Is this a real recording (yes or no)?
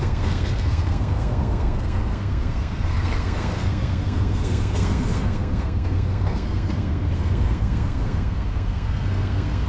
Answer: no